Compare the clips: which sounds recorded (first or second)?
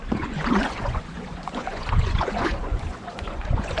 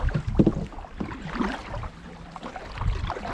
second